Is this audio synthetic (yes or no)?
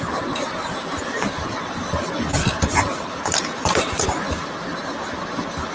no